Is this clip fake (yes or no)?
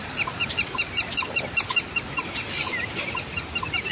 no